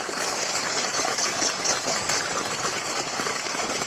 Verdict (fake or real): fake